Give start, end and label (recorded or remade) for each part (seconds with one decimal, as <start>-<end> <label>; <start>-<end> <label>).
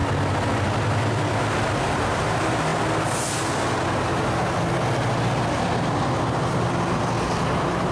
0.0-1.8 recorded; 1.8-2.7 remade; 2.7-7.4 recorded; 7.4-7.9 remade